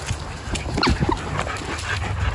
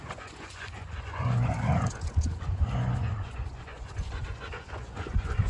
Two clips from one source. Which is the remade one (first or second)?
second